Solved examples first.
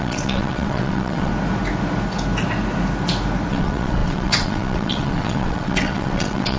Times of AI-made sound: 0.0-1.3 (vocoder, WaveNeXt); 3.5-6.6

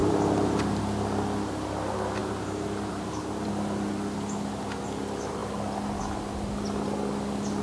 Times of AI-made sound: 0.0-0.8 (vocoder, BigVGAN v2); 2.2-3.5

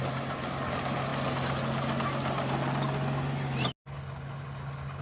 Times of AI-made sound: none